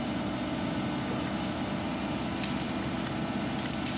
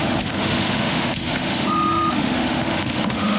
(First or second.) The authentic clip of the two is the first